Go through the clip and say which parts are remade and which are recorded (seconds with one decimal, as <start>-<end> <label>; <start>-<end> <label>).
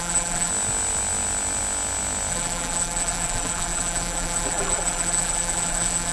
0.0-0.5 remade; 0.5-2.3 recorded; 2.3-6.1 remade